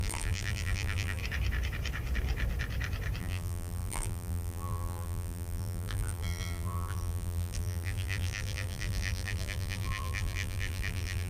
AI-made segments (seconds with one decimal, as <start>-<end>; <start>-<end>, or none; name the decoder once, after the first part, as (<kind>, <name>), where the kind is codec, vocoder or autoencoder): 0.0-1.2 (vocoder, BigVGAN v2); 3.2-11.3